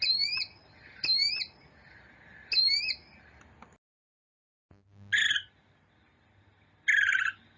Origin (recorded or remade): recorded